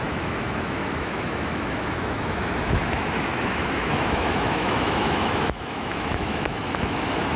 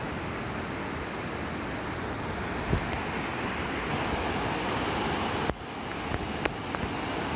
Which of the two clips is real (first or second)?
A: second